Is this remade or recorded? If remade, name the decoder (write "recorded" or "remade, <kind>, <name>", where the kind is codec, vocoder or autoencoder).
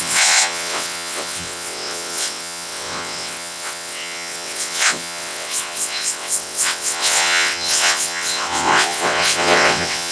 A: remade, vocoder, WaveNeXt